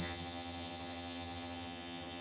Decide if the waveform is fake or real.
fake